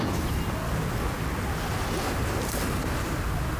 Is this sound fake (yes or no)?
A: no